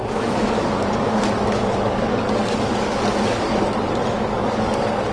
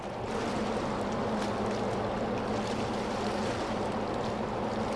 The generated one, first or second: first